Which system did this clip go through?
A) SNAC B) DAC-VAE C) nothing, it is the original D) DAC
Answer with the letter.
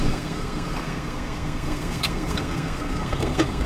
A